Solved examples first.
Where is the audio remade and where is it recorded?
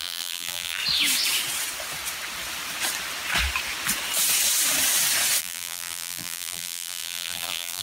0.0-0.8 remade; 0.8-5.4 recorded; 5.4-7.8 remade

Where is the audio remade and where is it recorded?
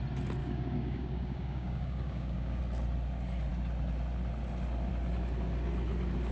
0.0-0.4 recorded; 0.4-2.6 remade; 2.6-6.3 recorded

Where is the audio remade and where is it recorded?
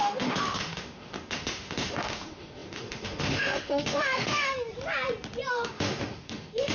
0.0-4.5 remade; 4.5-5.5 recorded; 5.5-6.7 remade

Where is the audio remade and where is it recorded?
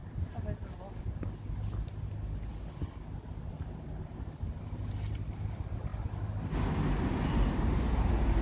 0.0-8.4 recorded